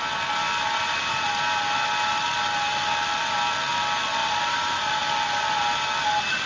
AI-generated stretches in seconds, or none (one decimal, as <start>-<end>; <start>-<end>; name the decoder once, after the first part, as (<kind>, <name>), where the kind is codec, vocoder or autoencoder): 4.2-5.0 (vocoder, BigVGAN v2)